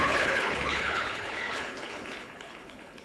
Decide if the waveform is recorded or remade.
remade